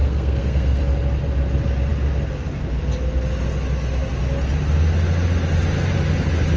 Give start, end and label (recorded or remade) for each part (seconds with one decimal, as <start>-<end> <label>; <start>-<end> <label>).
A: 0.0-0.8 remade; 0.8-6.6 recorded